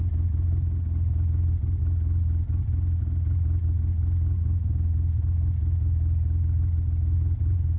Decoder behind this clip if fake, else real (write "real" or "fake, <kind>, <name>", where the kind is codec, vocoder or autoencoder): real